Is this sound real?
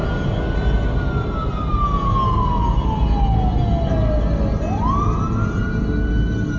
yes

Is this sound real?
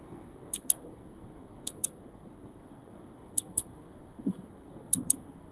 no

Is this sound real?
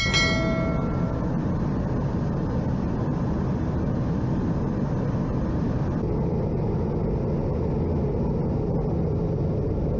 yes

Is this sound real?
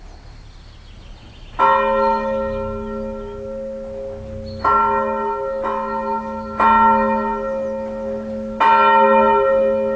yes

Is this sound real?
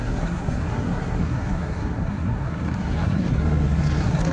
no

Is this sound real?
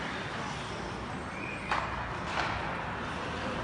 yes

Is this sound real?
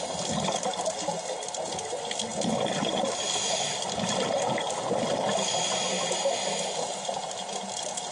yes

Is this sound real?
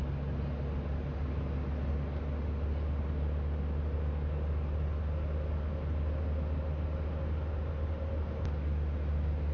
yes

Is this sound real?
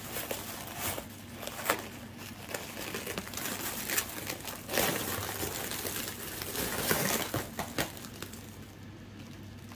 yes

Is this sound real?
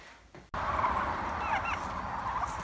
yes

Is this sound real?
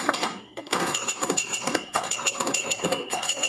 no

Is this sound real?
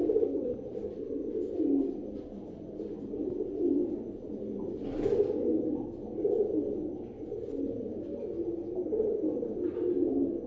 yes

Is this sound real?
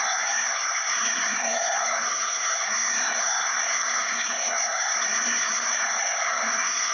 no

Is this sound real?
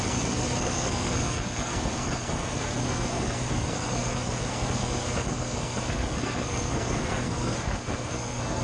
no